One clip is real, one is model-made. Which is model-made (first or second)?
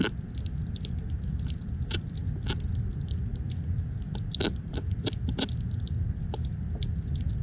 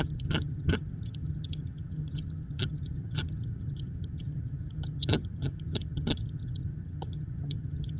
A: second